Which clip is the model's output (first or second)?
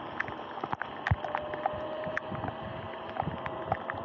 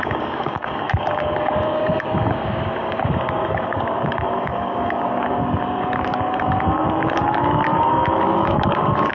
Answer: second